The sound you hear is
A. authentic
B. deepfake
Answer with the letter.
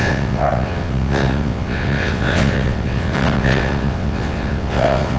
B